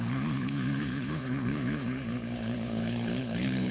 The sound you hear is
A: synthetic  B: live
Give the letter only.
A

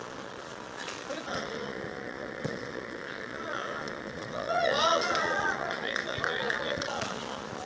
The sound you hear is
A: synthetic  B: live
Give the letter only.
A